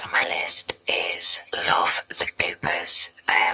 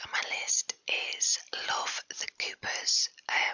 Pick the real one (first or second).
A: second